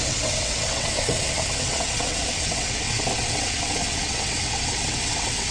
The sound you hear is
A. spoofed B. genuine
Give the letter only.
A